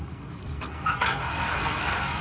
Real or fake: fake